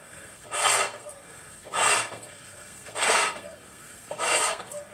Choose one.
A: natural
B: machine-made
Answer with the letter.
B